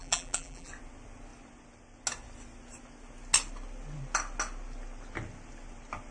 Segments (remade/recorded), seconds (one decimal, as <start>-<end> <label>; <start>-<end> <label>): 0.0-0.7 remade; 0.7-6.1 recorded